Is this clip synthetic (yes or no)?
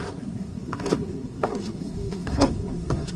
yes